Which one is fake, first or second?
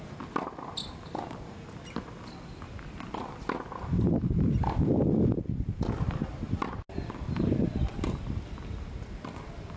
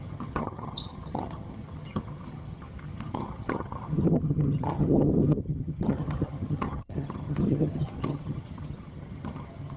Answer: second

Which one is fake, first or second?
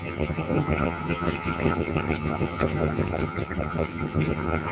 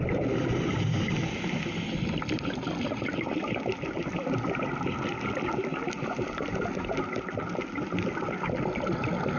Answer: first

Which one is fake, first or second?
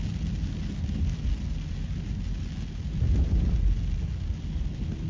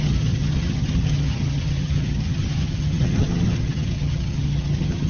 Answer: second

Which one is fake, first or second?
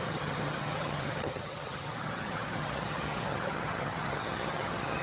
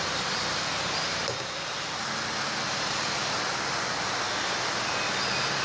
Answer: first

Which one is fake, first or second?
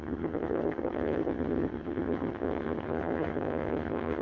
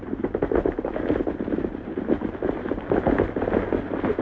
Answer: first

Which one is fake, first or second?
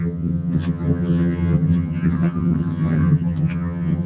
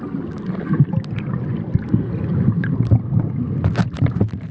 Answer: first